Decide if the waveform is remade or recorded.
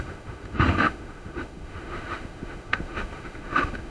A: remade